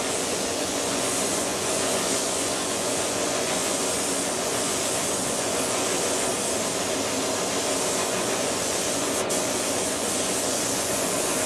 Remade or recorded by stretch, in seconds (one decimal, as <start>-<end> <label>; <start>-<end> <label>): 0.0-6.3 remade; 6.3-7.9 recorded; 7.9-11.5 remade